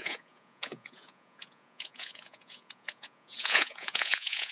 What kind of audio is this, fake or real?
fake